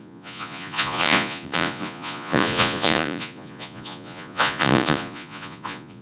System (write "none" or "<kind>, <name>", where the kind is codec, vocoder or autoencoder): vocoder, Vocos